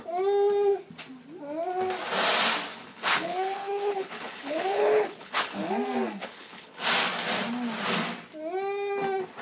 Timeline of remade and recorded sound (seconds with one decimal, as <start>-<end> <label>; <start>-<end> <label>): 0.0-2.9 recorded; 2.9-5.7 remade; 5.7-6.2 recorded; 6.2-6.8 remade; 6.8-9.4 recorded